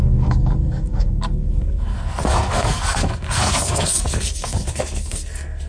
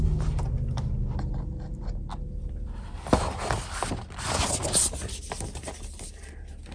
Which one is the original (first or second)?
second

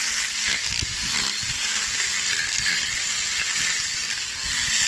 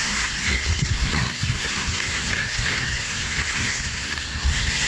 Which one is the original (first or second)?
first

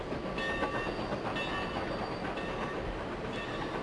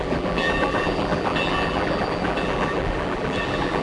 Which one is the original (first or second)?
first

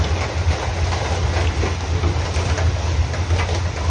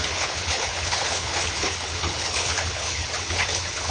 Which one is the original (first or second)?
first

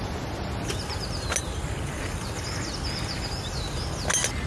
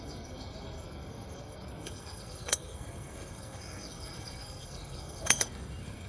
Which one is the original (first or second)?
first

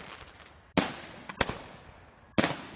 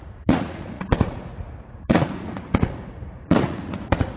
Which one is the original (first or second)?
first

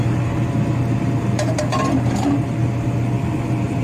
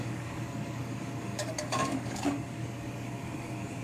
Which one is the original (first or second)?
first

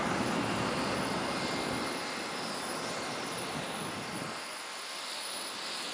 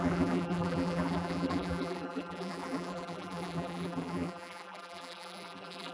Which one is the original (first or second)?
first